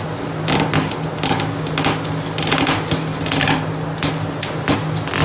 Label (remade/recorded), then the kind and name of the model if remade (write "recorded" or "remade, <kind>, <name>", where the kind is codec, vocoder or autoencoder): recorded